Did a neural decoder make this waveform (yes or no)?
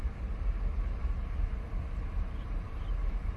yes